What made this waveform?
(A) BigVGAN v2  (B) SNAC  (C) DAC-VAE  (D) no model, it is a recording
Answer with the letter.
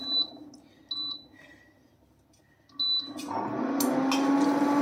D